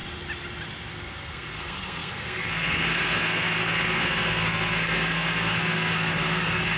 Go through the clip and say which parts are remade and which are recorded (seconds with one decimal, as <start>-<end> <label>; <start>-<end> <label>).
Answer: 0.0-0.9 recorded; 0.9-6.8 remade